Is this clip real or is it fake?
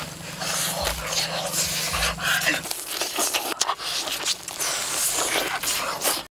real